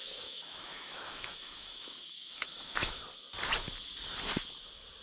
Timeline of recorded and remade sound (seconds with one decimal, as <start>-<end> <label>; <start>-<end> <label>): 0.0-3.0 remade; 3.0-5.0 recorded